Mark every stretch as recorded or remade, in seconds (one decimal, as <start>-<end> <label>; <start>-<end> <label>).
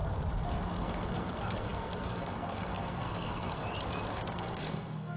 0.0-0.8 recorded; 0.8-3.6 remade; 3.6-4.3 recorded; 4.3-5.2 remade